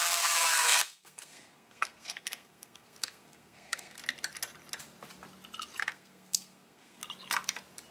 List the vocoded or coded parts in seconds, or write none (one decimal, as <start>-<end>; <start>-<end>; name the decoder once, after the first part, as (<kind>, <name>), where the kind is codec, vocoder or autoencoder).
0.0-4.0 (codec, SNAC); 5.8-7.0